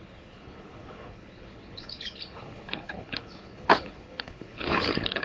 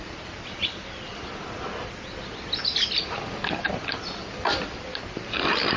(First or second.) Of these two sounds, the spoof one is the first